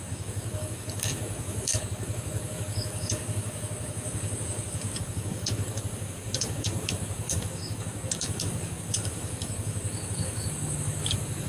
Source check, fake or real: fake